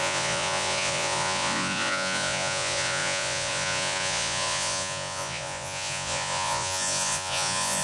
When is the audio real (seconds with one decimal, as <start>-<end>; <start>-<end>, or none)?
none